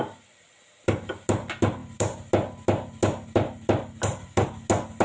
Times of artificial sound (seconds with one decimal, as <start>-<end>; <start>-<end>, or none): none